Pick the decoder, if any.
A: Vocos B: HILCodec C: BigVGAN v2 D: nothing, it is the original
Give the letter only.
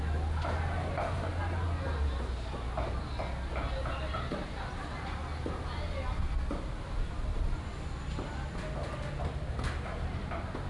D